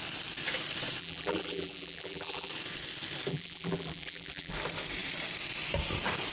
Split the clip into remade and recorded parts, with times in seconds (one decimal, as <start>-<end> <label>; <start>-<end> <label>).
0.0-1.0 recorded; 1.0-2.5 remade; 2.5-3.3 recorded; 3.3-4.5 remade; 4.5-6.3 recorded